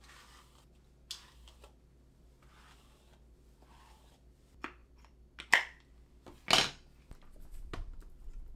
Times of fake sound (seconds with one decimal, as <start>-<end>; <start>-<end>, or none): none